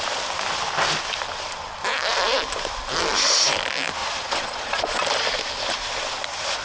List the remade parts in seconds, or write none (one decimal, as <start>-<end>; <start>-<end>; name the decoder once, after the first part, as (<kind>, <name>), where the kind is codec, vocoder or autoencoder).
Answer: 4.0-5.0 (vocoder, Vocos)